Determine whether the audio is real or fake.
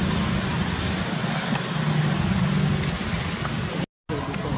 real